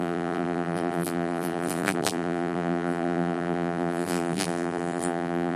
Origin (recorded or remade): remade